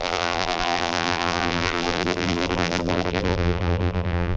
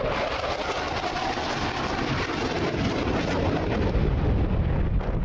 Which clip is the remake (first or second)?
first